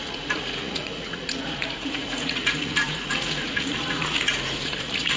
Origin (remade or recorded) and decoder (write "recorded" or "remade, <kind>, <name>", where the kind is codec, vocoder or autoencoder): remade, vocoder, Vocos